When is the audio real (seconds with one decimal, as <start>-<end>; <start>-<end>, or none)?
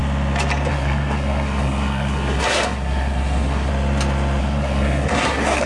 0.0-0.7; 3.7-4.4